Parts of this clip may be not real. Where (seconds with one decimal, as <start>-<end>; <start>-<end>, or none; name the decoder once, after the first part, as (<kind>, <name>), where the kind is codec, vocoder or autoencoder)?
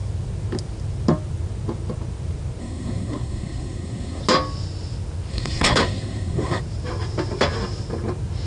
2.6-4.2 (codec, SNAC); 5.3-6.6